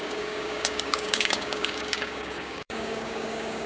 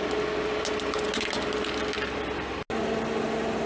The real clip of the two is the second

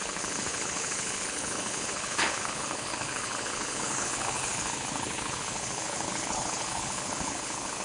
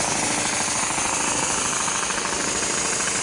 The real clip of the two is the second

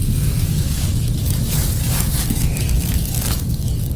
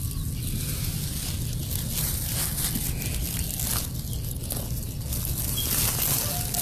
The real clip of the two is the second